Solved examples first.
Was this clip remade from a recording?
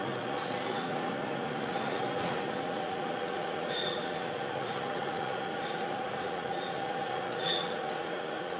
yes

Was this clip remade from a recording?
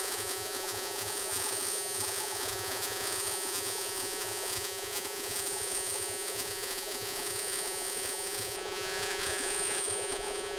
yes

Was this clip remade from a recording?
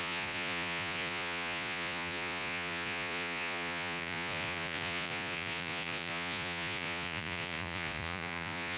yes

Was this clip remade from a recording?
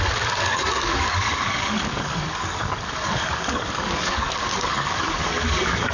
yes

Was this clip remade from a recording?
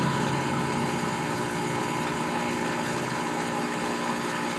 yes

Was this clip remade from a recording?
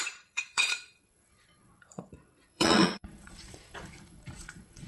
yes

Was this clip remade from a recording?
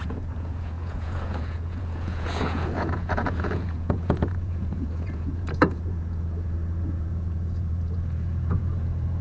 yes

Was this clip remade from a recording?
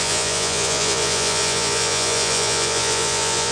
yes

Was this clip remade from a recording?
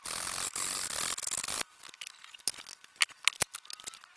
no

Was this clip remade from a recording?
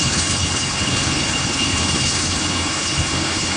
yes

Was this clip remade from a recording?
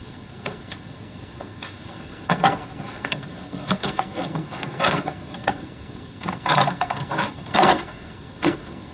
yes